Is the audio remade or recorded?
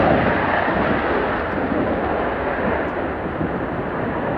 recorded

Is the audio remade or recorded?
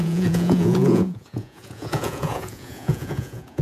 remade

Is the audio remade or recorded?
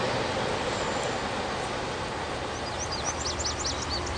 recorded